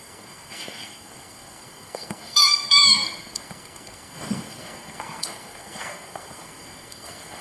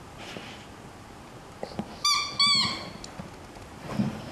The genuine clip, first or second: second